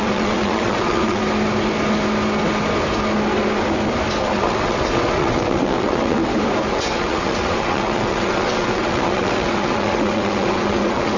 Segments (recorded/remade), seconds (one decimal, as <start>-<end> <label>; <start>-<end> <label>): 0.0-1.2 remade; 1.2-4.2 recorded; 4.2-6.2 remade; 6.2-6.7 recorded; 6.7-11.2 remade

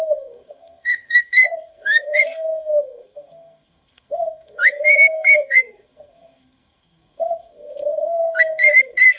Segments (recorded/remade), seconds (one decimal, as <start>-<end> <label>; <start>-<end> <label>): 0.0-9.2 remade

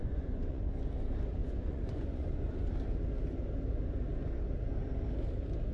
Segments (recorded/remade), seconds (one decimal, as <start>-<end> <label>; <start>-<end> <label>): 0.0-0.8 remade; 0.8-1.4 recorded; 1.4-2.7 remade; 2.7-5.7 recorded

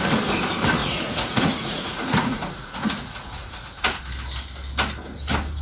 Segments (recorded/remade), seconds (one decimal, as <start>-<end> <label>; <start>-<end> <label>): 0.0-0.8 recorded; 0.8-4.0 remade; 4.0-5.6 recorded

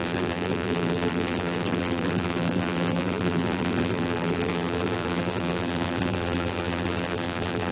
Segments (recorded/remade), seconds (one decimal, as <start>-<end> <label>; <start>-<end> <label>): 0.0-7.7 remade